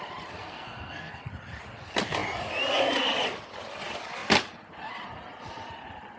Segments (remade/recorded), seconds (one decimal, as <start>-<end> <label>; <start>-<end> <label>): 0.0-0.4 recorded; 0.4-1.3 remade; 1.3-6.2 recorded